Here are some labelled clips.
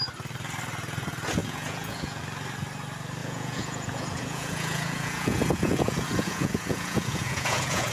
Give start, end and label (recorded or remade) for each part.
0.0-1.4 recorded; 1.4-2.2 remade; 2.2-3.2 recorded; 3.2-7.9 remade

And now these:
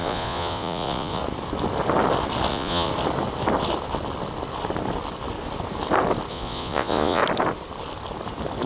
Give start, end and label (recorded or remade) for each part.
0.0-1.2 remade; 1.2-2.5 recorded; 2.5-2.9 remade; 2.9-6.3 recorded; 6.3-7.2 remade; 7.2-8.7 recorded

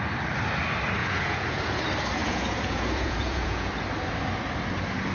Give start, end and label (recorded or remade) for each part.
0.0-1.0 recorded; 1.0-1.8 remade; 1.8-2.2 recorded; 2.2-3.7 remade; 3.7-5.1 recorded

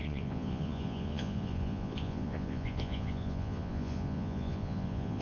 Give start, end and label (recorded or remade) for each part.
0.0-5.2 remade

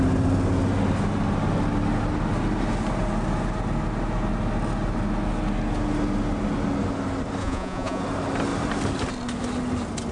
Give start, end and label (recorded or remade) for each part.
0.0-7.4 recorded; 7.4-8.0 remade; 8.0-10.1 recorded

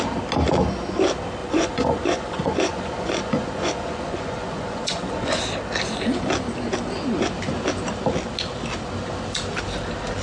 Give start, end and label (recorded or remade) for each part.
0.0-1.4 recorded; 1.4-5.4 remade; 5.4-10.2 recorded

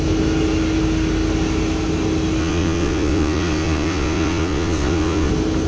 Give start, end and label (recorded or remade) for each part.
0.0-2.4 recorded; 2.4-5.3 remade; 5.3-5.7 recorded

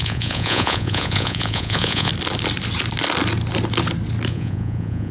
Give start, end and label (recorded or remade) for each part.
0.0-2.1 remade; 2.1-4.3 recorded; 4.3-5.1 remade